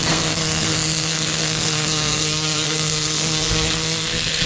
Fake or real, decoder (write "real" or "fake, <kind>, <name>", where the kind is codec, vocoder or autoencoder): fake, codec, SNAC